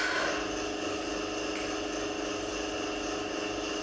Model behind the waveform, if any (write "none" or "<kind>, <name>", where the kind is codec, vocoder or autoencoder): none